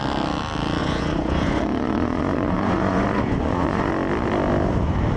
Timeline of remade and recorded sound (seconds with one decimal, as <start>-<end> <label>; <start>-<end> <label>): 0.0-0.8 recorded; 0.8-3.9 remade; 3.9-5.2 recorded